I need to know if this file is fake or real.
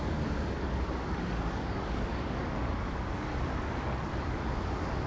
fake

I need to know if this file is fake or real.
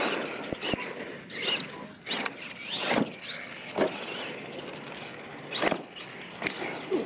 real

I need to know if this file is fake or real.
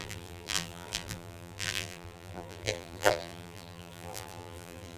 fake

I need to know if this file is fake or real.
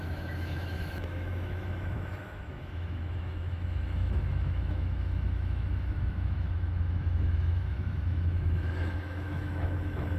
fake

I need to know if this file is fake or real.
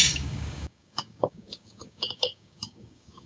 fake